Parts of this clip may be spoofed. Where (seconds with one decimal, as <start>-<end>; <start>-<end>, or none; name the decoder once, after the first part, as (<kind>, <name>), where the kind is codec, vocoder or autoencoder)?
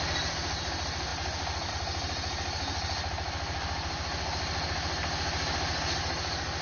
none